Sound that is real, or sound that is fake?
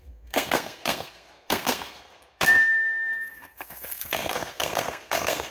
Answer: fake